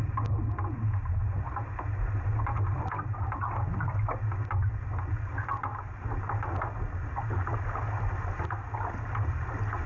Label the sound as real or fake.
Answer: real